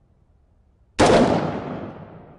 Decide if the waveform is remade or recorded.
recorded